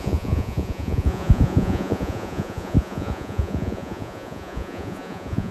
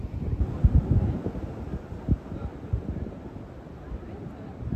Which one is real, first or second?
second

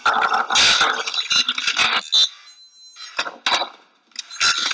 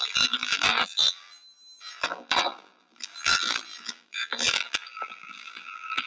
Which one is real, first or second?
first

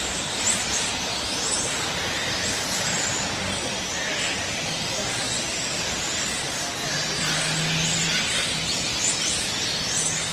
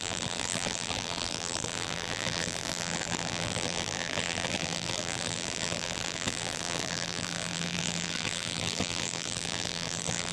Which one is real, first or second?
first